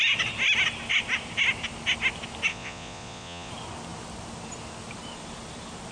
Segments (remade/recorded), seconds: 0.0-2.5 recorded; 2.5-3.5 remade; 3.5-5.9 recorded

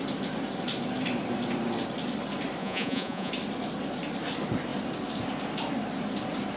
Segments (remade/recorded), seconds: 0.0-2.6 recorded; 2.6-3.3 remade; 3.3-6.6 recorded

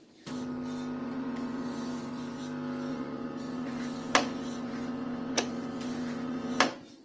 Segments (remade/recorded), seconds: 0.0-1.0 recorded; 1.0-2.4 remade; 2.4-2.9 recorded; 2.9-7.0 remade

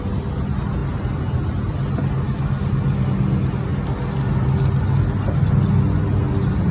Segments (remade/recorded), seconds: 0.0-6.7 recorded

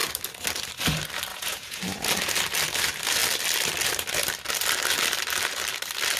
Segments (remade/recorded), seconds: 0.0-1.3 recorded; 1.3-1.8 remade; 1.8-6.2 recorded

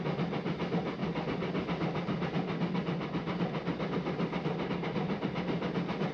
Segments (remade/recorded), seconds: 0.0-6.1 recorded

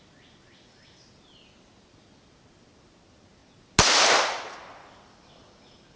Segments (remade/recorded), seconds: 0.0-6.0 recorded

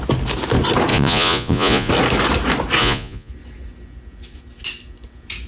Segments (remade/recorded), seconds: 0.0-0.9 recorded; 0.9-1.9 remade; 1.9-2.8 recorded; 2.8-3.3 remade; 3.3-5.5 recorded